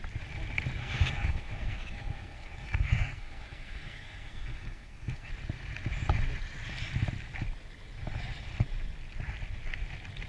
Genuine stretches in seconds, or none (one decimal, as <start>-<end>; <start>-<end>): 0.0-0.8; 5.3-10.3